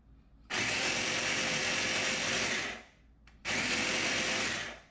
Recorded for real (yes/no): yes